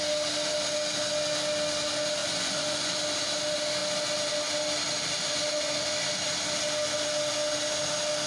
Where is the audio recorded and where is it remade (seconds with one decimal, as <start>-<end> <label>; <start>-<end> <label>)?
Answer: 0.0-2.2 recorded; 2.2-3.0 remade; 3.0-8.3 recorded